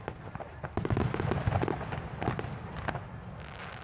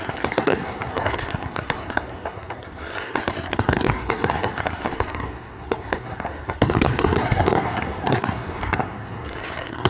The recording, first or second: first